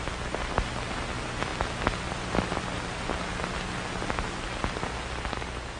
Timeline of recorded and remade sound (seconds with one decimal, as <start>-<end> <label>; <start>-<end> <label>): 0.0-5.8 recorded